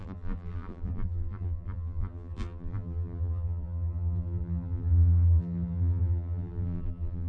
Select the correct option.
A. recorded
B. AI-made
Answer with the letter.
B